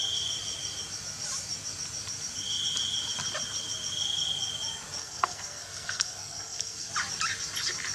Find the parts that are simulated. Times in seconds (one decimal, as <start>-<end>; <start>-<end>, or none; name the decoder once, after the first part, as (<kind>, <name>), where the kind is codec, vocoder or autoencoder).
5.0-6.9 (codec, SNAC)